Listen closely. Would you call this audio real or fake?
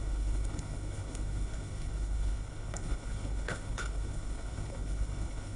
fake